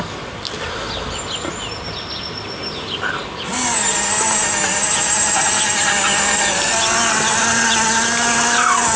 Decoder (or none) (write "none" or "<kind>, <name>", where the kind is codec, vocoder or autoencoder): none